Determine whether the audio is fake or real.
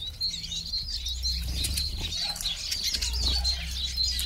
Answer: real